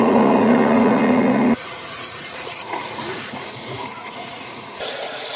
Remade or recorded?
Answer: remade